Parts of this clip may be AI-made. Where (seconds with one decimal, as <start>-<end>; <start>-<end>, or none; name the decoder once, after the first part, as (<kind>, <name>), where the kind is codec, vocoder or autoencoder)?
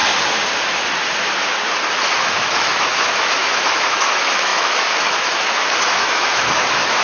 2.2-7.0 (autoencoder, DAC-VAE)